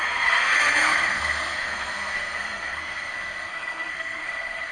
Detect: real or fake fake